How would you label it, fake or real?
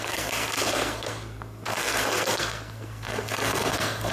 fake